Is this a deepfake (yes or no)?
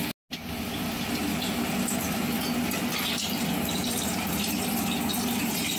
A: no